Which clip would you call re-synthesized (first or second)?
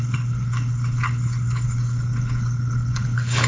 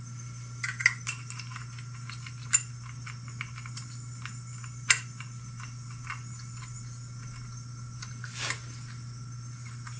first